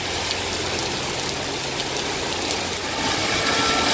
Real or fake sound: real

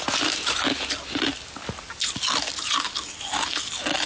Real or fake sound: real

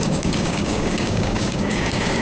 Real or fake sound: fake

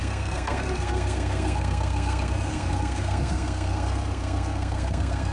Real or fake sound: fake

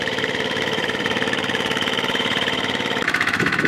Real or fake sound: fake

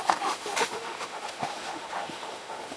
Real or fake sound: fake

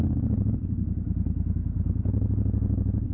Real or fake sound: real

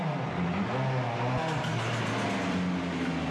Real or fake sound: real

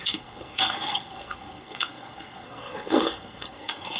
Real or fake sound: fake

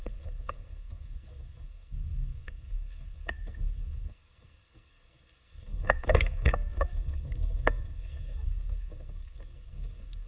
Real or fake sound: fake